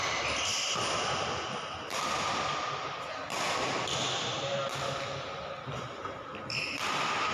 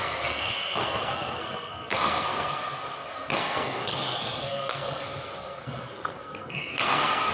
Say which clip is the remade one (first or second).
second